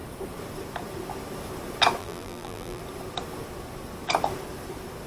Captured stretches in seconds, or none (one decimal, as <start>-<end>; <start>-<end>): 0.0-2.0; 2.8-5.1